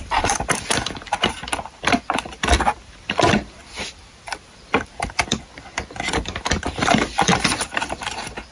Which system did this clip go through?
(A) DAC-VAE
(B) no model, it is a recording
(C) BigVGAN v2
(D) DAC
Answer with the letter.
C